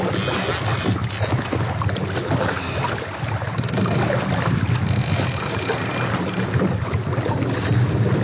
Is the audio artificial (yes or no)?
no